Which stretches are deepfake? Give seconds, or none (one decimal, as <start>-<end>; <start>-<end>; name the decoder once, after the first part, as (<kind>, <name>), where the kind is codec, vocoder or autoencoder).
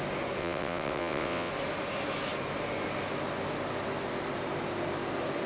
0.4-1.5 (vocoder, WaveNeXt)